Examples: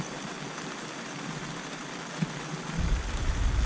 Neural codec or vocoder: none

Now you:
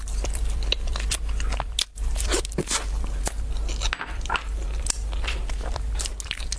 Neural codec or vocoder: none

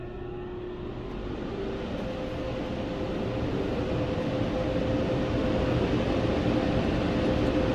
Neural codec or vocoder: none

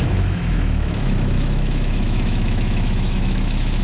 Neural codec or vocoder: autoencoder, DAC-VAE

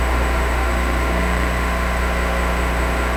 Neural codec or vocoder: autoencoder, DAC-VAE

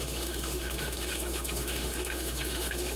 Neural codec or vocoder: autoencoder, DAC-VAE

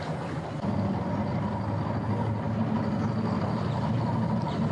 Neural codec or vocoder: none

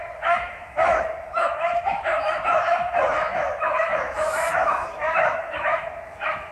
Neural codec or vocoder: autoencoder, DAC-VAE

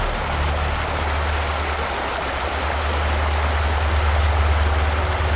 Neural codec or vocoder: none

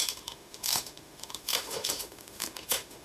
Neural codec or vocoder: autoencoder, DAC-VAE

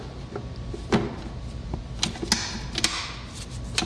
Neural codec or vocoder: none